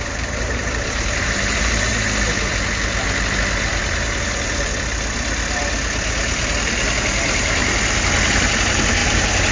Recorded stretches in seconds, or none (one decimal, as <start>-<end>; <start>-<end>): 1.9-4.3; 4.7-7.0; 7.6-8.3